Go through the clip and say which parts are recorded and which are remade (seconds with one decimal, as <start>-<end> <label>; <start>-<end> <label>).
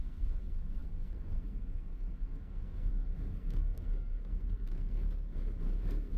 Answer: 0.0-6.2 remade